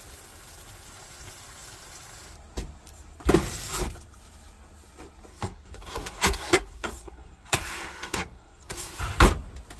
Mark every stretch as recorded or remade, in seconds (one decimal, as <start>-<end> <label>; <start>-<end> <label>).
0.0-5.3 recorded; 5.3-9.0 remade; 9.0-9.8 recorded